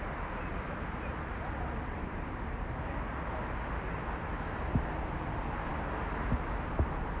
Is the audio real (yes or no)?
yes